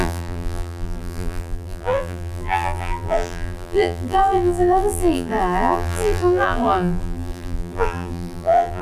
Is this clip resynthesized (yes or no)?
yes